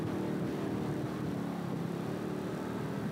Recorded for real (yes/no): yes